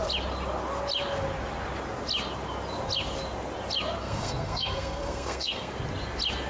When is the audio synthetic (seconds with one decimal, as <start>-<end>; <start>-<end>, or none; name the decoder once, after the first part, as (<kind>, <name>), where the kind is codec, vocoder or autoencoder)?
4.0-5.7 (codec, SNAC)